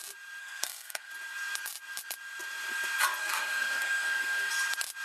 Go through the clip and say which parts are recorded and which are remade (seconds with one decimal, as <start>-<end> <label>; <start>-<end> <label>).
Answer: 0.0-0.4 recorded; 0.4-1.1 remade; 1.1-3.2 recorded; 3.2-4.5 remade; 4.5-5.0 recorded